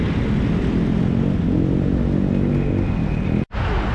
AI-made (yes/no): no